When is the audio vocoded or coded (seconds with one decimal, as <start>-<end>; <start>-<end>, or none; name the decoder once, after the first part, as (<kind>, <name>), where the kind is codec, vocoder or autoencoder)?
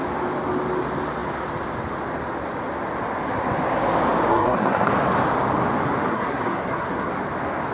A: 4.3-4.9 (codec, SNAC); 6.1-7.1